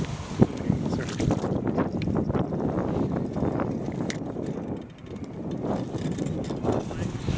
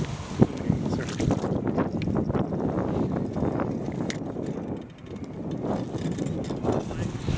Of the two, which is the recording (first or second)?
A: second